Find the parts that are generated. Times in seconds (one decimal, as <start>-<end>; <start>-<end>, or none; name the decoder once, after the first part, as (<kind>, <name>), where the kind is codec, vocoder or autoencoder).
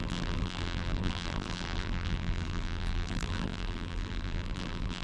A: 0.0-5.0 (vocoder, BigVGAN v2)